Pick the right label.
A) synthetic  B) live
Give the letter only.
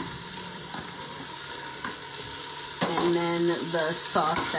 A